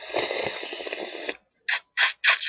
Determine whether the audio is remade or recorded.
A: recorded